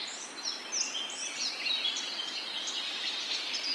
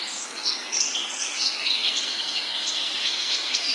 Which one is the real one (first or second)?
first